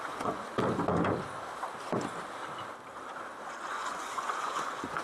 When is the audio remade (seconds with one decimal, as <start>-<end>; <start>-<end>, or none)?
0.0-0.5; 3.5-5.0